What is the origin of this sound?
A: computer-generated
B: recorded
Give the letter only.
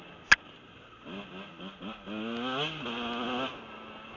B